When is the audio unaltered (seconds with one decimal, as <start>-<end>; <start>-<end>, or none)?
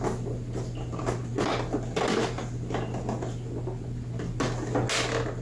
0.0-5.4